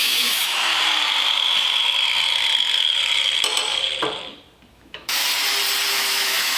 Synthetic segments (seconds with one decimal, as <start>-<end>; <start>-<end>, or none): 0.0-0.7; 4.7-5.2; 5.9-6.6